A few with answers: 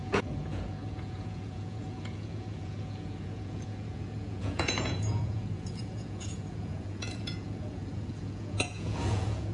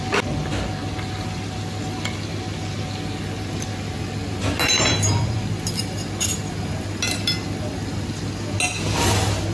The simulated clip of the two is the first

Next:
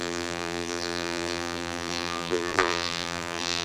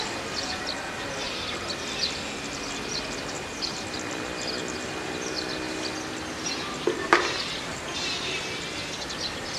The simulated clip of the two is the first